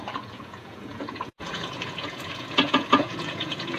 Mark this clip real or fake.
fake